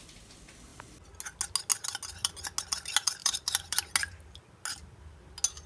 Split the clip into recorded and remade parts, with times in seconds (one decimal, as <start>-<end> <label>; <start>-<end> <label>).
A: 0.0-3.2 recorded; 3.2-3.8 remade; 3.8-5.7 recorded